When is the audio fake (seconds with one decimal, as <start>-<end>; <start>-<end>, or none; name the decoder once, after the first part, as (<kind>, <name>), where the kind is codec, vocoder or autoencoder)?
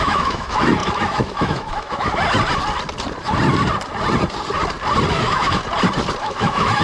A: 0.0-2.1 (autoencoder, DAC-VAE); 5.1-5.6; 6.2-6.8